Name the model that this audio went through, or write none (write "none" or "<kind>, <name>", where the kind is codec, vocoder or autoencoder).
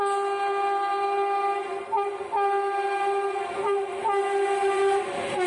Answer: none